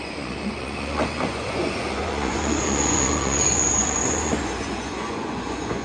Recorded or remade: remade